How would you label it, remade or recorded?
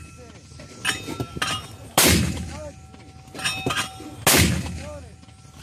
recorded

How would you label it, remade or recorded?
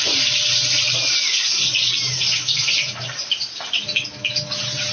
recorded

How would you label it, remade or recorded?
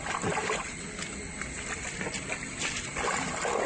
recorded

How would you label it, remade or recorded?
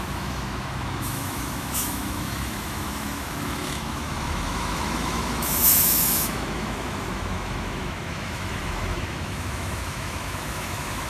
remade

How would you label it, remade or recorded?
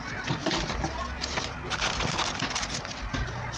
recorded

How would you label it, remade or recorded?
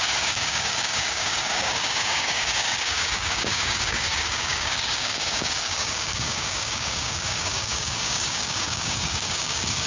remade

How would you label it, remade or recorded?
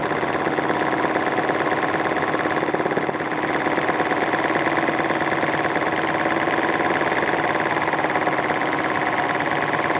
recorded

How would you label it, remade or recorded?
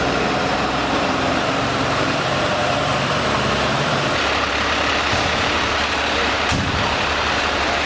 remade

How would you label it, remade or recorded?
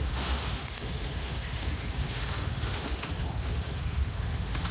remade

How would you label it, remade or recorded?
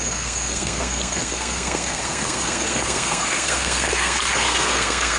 remade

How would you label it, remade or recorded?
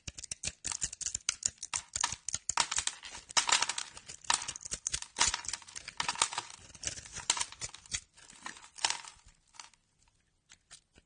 recorded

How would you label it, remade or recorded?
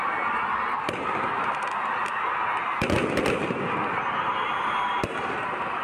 recorded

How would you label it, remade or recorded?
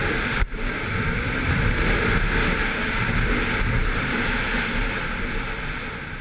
remade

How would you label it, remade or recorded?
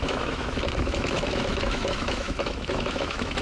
remade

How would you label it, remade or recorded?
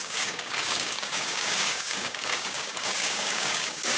remade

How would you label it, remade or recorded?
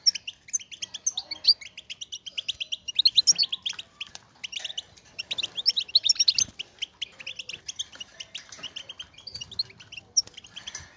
recorded